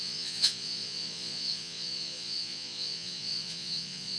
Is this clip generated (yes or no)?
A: yes